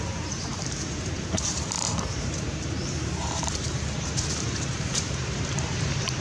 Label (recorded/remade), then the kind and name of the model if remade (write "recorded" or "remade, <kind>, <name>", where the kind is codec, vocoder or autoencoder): remade, vocoder, BigVGAN v2